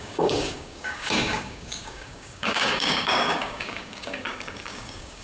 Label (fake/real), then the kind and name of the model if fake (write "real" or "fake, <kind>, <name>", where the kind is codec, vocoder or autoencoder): fake, codec, DAC